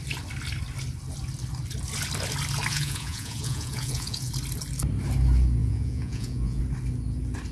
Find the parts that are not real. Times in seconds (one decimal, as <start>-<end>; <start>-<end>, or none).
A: 2.7-4.3; 5.6-6.6